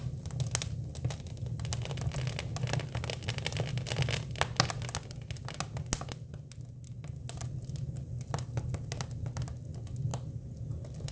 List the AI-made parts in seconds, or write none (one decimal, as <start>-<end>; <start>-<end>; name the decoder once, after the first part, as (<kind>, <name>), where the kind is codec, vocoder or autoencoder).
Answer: none